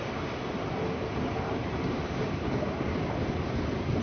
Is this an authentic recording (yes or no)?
yes